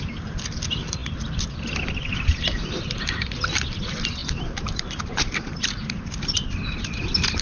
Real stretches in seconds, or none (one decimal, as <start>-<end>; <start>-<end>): 0.0-4.2; 6.5-7.4